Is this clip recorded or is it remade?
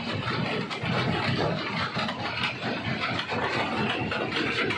recorded